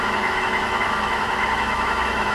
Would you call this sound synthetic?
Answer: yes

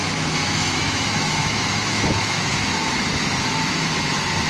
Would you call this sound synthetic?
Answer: yes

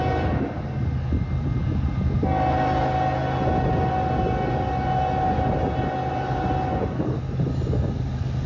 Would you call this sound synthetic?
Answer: no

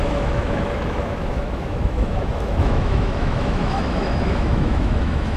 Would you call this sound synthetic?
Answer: yes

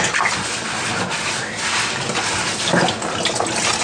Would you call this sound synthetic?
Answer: no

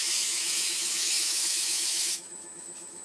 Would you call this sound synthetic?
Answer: yes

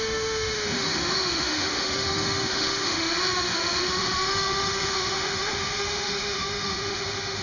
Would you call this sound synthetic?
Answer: yes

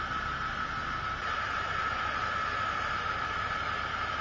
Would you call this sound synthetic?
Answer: no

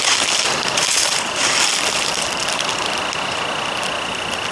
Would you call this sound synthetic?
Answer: no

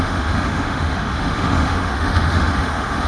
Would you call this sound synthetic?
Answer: yes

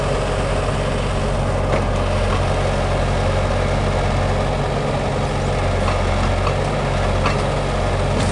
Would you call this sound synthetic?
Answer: no